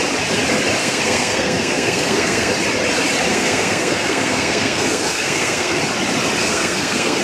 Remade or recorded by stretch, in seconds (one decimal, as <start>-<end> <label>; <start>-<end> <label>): 0.0-0.8 recorded; 0.8-2.5 remade; 2.5-3.3 recorded; 3.3-5.8 remade; 5.8-6.4 recorded; 6.4-7.2 remade